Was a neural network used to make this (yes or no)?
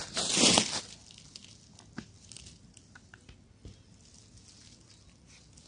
no